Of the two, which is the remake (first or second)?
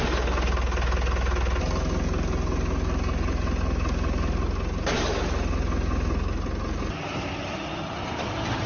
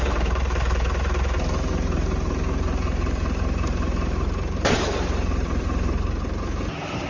second